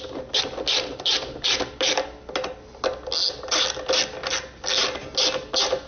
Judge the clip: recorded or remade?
recorded